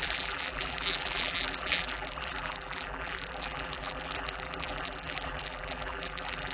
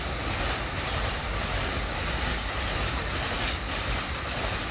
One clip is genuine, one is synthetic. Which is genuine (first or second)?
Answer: second